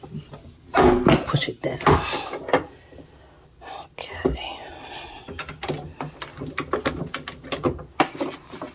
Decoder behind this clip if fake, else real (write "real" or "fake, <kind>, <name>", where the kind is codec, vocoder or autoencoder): real